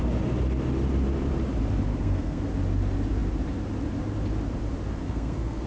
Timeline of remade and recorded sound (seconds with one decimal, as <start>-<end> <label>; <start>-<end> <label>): 0.0-1.9 recorded; 1.9-2.4 remade; 2.4-5.0 recorded; 5.0-5.7 remade